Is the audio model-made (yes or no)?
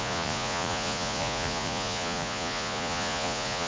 yes